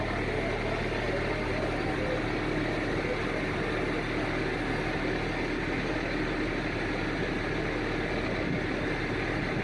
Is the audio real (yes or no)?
yes